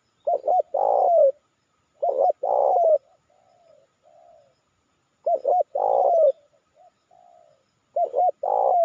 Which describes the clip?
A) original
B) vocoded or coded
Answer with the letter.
A